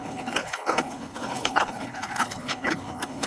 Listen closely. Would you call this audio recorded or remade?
remade